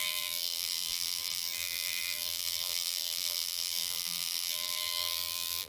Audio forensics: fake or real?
fake